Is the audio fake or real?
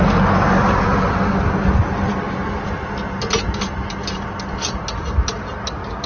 real